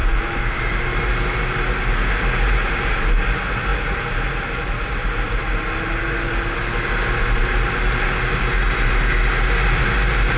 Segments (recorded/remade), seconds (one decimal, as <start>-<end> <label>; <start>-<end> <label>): 0.0-10.4 recorded